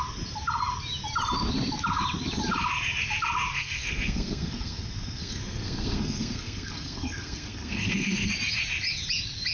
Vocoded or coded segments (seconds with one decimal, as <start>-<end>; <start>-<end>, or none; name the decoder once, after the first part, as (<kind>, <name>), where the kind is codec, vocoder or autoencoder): 3.5-8.3 (codec, SNAC)